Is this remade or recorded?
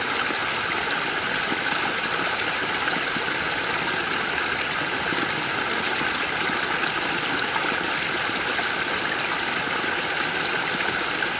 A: recorded